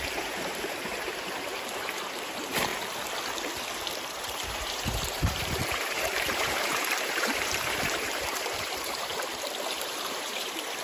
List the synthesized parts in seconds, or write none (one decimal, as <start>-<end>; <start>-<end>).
0.0-2.7; 4.1-9.1; 9.7-10.8